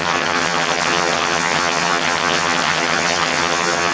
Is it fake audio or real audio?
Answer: fake